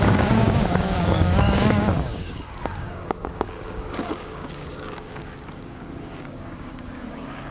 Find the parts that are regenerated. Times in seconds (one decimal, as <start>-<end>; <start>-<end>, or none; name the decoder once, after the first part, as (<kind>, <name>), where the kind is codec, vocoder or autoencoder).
0.0-7.5 (codec, DAC)